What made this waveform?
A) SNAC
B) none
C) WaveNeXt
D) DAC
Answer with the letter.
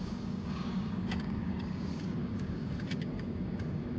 D